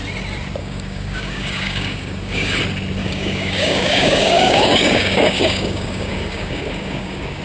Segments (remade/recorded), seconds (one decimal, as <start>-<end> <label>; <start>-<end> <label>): 0.0-0.6 recorded; 0.6-2.6 remade; 2.6-3.0 recorded; 3.0-7.4 remade